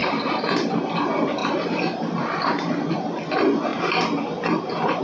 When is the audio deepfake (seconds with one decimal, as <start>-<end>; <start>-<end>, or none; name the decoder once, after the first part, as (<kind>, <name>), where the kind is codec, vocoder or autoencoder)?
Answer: 0.0-0.8 (vocoder, BigVGAN v2); 1.4-2.7